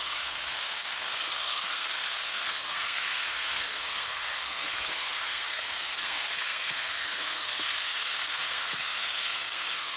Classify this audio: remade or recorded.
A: remade